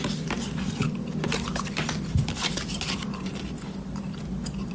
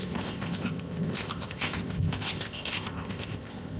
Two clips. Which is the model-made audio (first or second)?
second